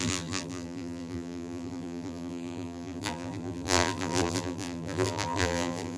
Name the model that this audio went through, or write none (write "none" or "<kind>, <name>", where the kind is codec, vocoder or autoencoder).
vocoder, BigVGAN v2